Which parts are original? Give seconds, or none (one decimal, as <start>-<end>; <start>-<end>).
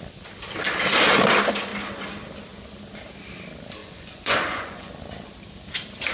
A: 0.0-3.8; 4.9-6.1